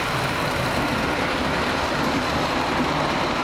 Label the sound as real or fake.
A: real